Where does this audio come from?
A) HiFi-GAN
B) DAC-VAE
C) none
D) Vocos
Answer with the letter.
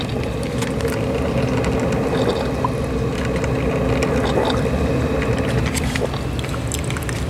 C